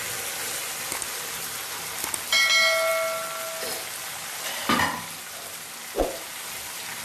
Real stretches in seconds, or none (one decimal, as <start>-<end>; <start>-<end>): 0.0-7.0